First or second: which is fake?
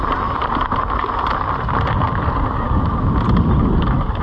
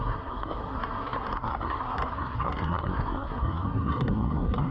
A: second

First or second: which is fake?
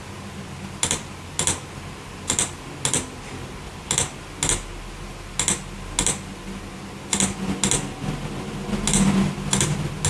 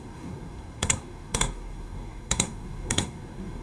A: second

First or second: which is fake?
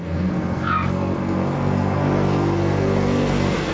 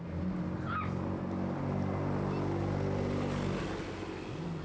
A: first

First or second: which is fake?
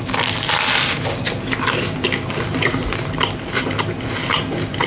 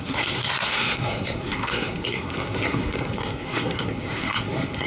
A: second